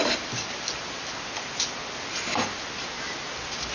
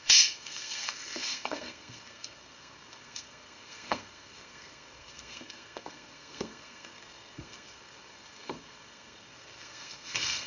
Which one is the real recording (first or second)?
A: first